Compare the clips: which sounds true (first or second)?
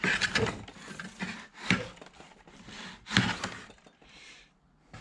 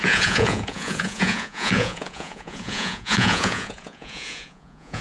first